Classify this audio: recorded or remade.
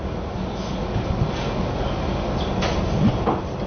recorded